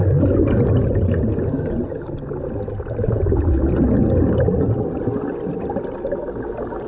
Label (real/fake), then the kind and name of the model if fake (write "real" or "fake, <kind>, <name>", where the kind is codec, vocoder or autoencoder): real